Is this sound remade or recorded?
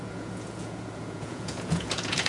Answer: remade